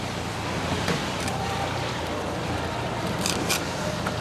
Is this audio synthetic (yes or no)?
yes